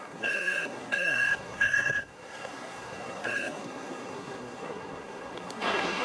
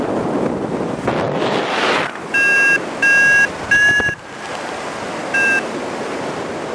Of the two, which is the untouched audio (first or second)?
second